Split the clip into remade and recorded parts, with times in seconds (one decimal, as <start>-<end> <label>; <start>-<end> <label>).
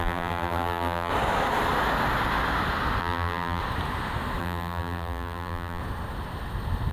0.0-1.1 remade; 1.1-3.0 recorded; 3.0-3.6 remade; 3.6-4.4 recorded; 4.4-5.8 remade; 5.8-6.9 recorded